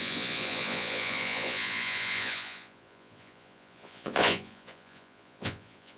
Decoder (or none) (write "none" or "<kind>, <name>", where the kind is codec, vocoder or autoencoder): vocoder, Vocos